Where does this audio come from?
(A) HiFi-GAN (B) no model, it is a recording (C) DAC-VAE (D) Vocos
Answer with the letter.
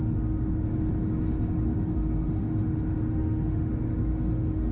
C